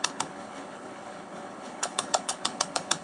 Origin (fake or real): fake